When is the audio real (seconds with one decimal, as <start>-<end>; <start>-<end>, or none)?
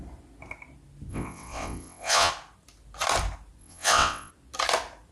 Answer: 0.0-1.1; 2.3-3.6; 4.3-5.1